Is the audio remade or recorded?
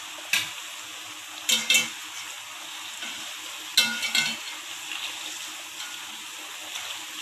recorded